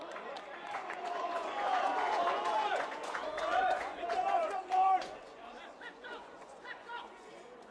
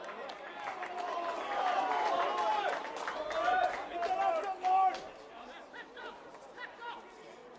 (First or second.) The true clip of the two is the second